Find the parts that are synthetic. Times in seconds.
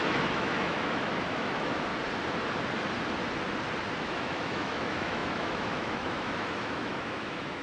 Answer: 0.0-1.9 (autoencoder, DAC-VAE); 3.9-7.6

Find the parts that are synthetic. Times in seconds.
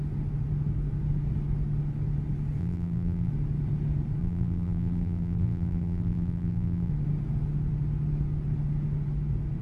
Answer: 2.6-3.3 (vocoder, BigVGAN v2); 4.2-6.9